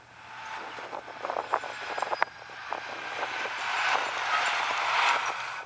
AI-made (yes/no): no